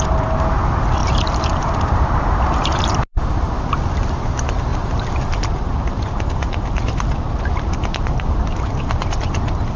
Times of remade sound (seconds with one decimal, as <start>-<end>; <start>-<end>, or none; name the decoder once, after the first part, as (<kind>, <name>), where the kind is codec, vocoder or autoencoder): 1.0-3.7 (vocoder, BigVGAN v2); 4.7-7.6